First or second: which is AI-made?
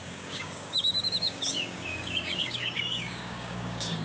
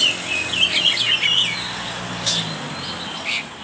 first